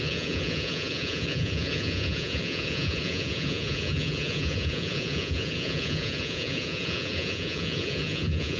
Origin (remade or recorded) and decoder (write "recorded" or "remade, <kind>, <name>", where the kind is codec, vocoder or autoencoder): remade, vocoder, Vocos